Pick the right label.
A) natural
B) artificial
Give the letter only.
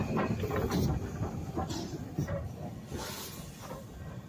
A